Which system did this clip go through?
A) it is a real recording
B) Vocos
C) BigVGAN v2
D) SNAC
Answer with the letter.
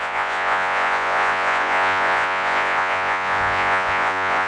B